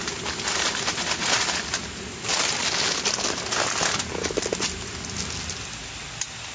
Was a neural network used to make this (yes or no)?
no